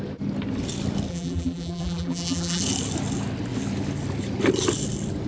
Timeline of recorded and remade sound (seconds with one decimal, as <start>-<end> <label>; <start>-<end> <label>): 0.0-1.1 recorded; 1.1-2.6 remade; 2.6-5.3 recorded